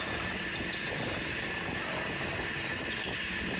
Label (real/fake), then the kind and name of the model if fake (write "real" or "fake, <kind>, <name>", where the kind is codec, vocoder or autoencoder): real